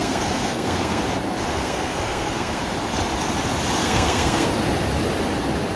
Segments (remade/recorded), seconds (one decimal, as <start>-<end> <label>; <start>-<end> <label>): 0.0-1.0 remade; 1.0-1.5 recorded; 1.5-2.6 remade; 2.6-3.8 recorded; 3.8-4.5 remade; 4.5-5.8 recorded